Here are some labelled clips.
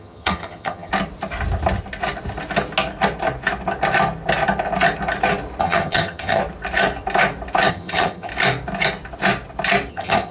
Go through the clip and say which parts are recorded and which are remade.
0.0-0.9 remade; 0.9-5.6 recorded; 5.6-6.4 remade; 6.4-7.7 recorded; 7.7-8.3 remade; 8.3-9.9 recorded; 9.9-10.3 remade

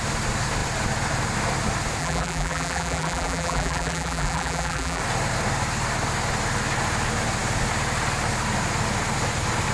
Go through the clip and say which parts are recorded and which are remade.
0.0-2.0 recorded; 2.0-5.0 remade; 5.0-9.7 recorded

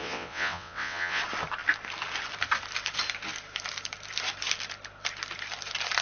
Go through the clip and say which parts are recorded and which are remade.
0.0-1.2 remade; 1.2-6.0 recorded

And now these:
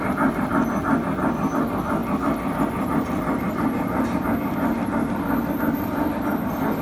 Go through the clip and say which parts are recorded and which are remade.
0.0-6.8 recorded